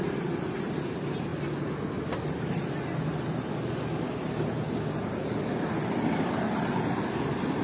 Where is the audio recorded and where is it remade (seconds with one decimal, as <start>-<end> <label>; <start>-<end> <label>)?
0.0-7.6 recorded